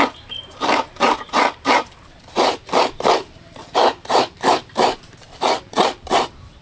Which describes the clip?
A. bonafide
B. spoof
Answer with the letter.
B